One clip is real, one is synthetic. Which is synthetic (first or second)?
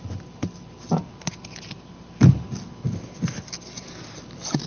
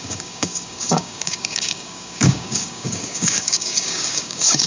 second